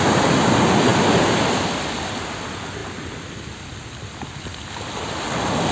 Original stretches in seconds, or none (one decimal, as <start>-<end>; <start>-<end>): 0.0-5.7